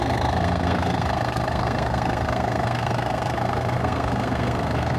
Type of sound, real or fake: fake